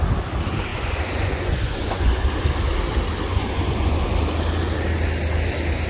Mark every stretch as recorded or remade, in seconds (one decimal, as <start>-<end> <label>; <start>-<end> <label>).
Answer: 0.0-0.7 recorded; 0.7-2.2 remade; 2.2-3.3 recorded; 3.3-4.0 remade; 4.0-5.9 recorded